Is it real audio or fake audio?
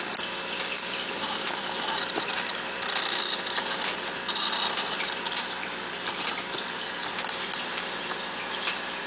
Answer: real